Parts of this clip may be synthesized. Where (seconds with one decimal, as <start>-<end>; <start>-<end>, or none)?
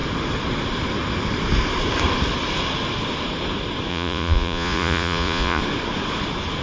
3.9-5.6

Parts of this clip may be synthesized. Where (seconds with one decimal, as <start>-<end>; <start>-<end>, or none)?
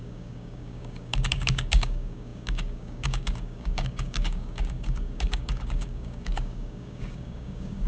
0.0-7.9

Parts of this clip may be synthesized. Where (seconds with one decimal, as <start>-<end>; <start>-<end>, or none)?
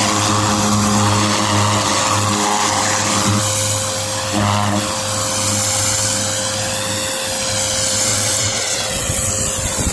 8.1-9.3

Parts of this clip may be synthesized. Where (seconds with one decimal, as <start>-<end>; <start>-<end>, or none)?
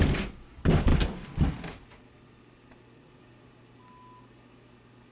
none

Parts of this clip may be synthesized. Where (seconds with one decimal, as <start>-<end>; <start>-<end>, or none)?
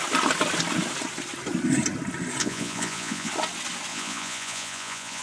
2.4-3.3; 3.9-5.2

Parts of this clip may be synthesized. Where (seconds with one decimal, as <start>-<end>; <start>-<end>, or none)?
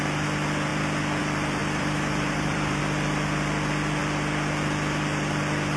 1.6-2.8